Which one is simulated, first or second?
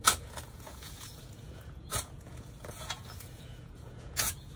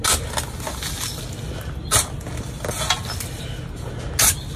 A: first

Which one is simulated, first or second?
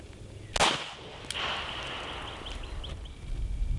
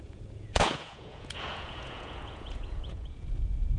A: second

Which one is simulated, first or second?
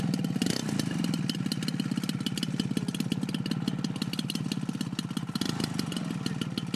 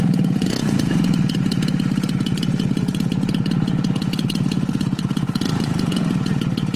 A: second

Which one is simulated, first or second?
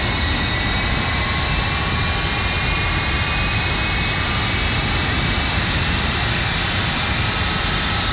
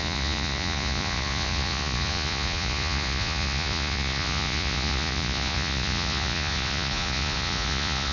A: second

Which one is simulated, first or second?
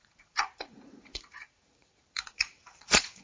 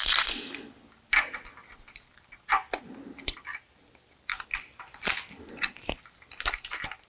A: first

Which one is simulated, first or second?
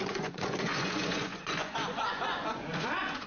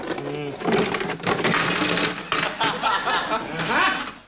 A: first